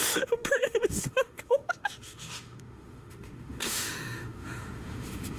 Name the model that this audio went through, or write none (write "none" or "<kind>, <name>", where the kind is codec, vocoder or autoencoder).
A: autoencoder, DAC-VAE